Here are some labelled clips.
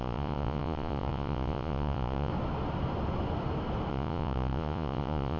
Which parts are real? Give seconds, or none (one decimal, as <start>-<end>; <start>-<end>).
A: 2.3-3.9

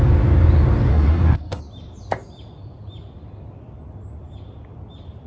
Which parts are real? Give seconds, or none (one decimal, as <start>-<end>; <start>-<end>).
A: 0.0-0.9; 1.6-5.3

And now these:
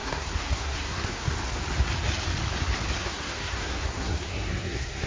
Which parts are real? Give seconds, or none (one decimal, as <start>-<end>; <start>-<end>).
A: 1.3-3.0